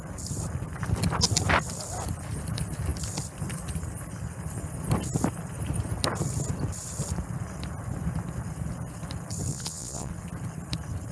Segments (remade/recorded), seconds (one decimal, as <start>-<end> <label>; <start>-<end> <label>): 0.0-9.5 recorded; 9.5-10.1 remade; 10.1-11.1 recorded